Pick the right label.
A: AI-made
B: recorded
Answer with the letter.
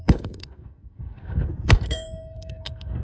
A